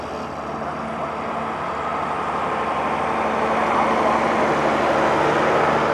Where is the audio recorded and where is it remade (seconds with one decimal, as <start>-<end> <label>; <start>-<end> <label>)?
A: 0.0-5.9 recorded